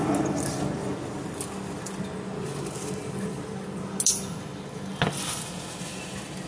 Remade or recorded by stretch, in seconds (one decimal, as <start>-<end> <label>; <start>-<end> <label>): 0.0-6.5 recorded